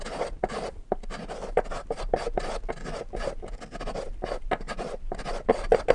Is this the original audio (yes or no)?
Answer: yes